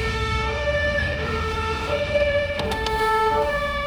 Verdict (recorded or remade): remade